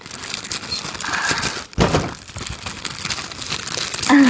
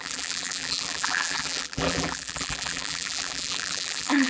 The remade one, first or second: second